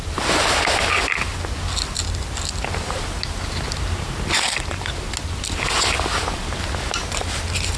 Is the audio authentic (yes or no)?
yes